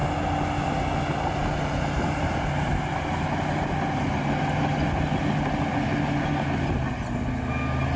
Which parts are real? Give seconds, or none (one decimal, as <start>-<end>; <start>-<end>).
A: 0.0-8.0